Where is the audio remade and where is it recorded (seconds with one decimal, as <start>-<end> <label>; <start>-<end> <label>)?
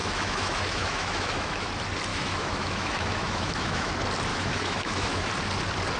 0.0-1.7 remade; 1.7-2.1 recorded; 2.1-3.9 remade; 3.9-4.3 recorded; 4.3-5.3 remade; 5.3-6.0 recorded